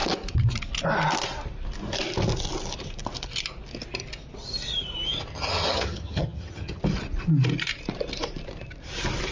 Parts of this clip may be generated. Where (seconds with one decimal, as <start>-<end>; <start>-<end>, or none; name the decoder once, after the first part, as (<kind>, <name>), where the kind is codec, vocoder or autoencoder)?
5.3-6.8 (vocoder, HiFi-GAN)